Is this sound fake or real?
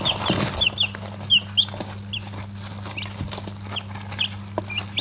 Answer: real